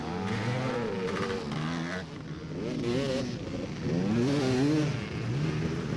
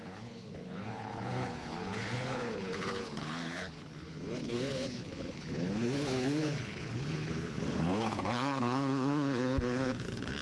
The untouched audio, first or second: first